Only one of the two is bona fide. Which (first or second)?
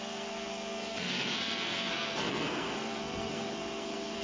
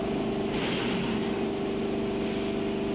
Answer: second